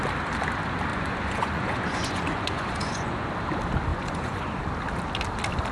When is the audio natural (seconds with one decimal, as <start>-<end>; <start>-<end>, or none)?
0.0-0.9; 3.3-3.9; 4.6-5.7